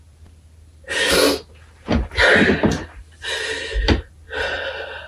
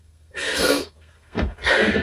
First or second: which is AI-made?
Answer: second